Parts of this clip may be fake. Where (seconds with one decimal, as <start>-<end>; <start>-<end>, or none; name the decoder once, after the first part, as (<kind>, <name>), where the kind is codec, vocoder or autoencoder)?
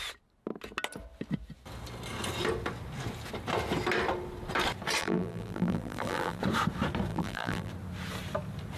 5.0-6.4 (vocoder, BigVGAN v2); 7.1-7.7